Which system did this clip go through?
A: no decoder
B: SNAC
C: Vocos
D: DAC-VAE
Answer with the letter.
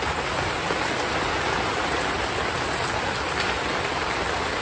A